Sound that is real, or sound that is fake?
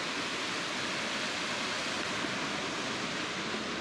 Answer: real